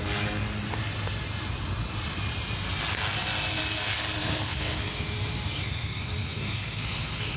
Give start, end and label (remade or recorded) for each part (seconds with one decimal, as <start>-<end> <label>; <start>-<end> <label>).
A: 0.0-4.2 recorded; 4.2-4.9 remade; 4.9-5.6 recorded; 5.6-7.4 remade